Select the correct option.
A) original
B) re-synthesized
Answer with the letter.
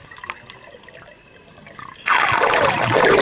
A